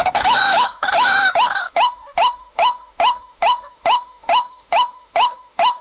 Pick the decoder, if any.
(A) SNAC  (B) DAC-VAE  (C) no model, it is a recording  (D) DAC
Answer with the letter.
B